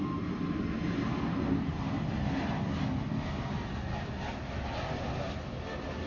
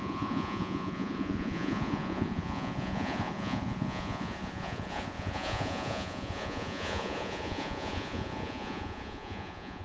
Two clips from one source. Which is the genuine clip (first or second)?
first